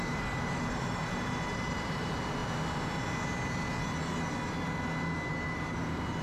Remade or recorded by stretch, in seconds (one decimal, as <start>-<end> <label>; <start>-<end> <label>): 0.0-2.4 remade; 2.4-5.3 recorded; 5.3-6.2 remade